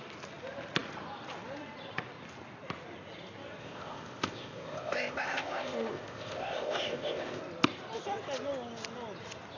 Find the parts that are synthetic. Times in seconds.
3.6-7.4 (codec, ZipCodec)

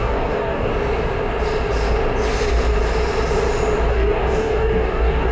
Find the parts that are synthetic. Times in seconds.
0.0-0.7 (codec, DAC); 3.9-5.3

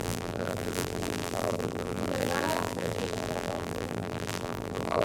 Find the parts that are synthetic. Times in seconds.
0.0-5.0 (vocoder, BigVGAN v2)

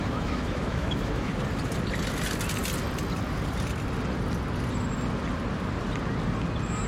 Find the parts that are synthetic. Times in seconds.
0.0-1.3 (autoencoder, DAC-VAE)